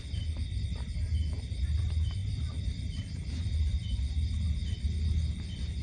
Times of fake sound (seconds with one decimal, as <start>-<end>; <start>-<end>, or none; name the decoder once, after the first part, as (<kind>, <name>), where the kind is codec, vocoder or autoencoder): none